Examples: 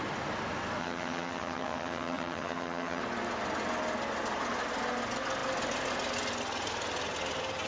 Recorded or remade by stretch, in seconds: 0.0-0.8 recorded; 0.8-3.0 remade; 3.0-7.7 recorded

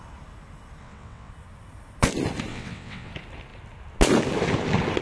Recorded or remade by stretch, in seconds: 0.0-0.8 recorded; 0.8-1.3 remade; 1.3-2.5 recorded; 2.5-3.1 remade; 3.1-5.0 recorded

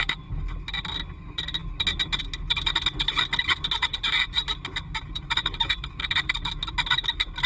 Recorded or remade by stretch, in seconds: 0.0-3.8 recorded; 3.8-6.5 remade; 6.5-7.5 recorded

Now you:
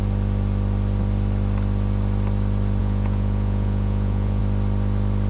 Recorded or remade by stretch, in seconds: 0.0-2.8 recorded; 2.8-4.4 remade; 4.4-5.3 recorded